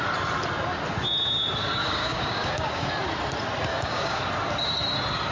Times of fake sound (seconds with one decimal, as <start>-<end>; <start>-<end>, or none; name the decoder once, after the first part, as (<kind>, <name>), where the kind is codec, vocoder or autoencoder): 1.8-2.9 (codec, DAC); 3.7-4.2